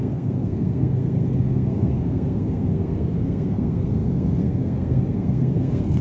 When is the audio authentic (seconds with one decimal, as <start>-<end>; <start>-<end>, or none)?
none